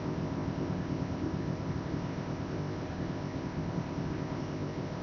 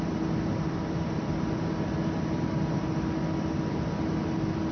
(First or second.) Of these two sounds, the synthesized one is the first